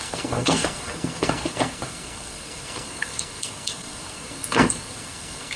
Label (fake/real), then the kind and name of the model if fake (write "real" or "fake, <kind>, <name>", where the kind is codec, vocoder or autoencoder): fake, codec, SNAC